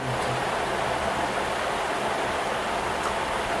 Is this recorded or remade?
recorded